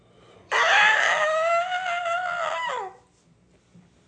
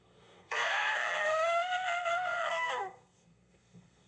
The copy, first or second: second